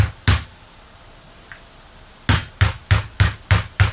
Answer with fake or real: real